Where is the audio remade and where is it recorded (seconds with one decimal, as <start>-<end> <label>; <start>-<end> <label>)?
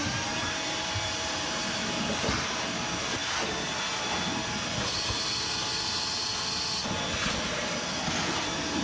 0.0-1.9 remade; 1.9-8.8 recorded